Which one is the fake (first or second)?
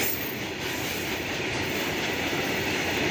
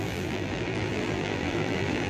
second